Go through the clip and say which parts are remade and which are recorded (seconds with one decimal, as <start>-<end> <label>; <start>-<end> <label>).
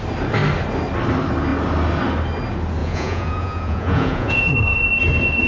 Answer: 0.0-2.8 recorded; 2.8-4.5 remade; 4.5-5.5 recorded